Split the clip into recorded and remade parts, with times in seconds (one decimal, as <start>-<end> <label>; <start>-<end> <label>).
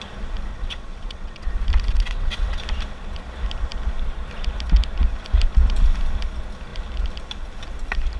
0.0-0.5 recorded; 0.5-1.5 remade; 1.5-1.9 recorded; 1.9-2.6 remade; 2.6-8.2 recorded